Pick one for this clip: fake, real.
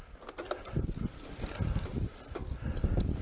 real